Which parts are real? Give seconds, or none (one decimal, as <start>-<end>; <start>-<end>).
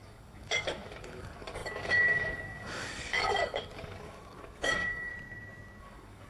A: 5.1-5.8